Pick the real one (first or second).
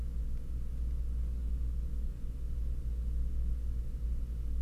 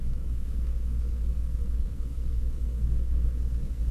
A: first